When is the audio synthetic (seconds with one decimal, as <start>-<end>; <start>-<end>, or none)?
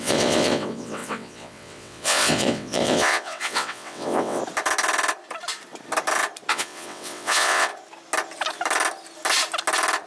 0.0-4.4; 6.5-7.7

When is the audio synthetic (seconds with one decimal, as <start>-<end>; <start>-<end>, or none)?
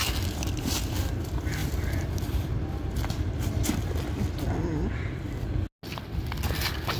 1.6-3.7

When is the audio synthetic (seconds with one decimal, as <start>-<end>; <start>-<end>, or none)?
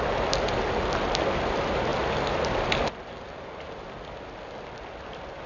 none